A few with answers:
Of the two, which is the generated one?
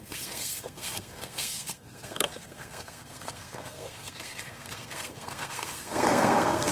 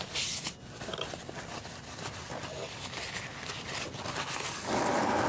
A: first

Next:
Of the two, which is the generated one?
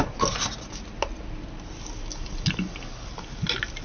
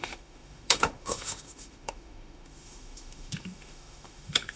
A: second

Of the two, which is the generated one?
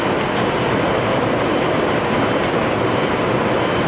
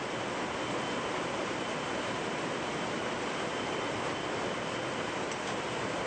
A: second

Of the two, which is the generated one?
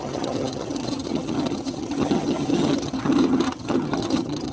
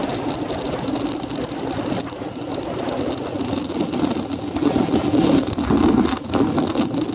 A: first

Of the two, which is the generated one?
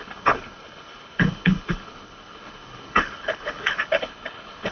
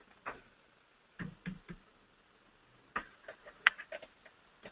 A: first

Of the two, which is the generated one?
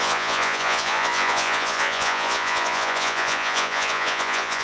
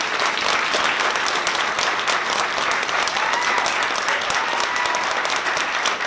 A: first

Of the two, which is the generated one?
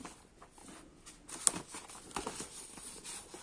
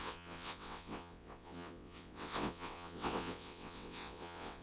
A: second